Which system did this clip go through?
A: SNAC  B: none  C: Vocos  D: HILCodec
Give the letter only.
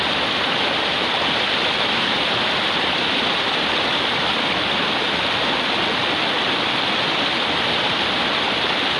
B